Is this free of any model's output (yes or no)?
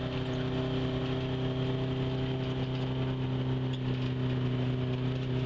yes